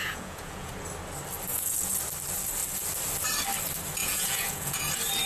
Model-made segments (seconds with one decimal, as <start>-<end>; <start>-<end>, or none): 0.0-0.7; 1.5-2.0; 4.0-4.8